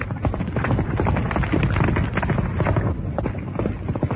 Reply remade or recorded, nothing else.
recorded